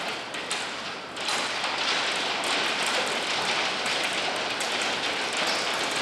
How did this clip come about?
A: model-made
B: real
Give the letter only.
B